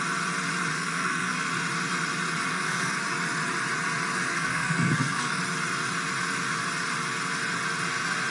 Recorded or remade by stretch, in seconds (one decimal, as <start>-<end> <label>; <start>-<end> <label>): 0.0-0.7 recorded; 0.7-1.5 remade; 1.5-2.5 recorded; 2.5-3.0 remade; 3.0-4.3 recorded; 4.3-5.4 remade; 5.4-8.3 recorded